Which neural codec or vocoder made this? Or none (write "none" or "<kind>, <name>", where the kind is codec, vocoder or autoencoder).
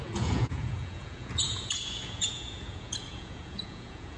vocoder, Vocos